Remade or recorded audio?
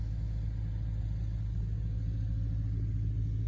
recorded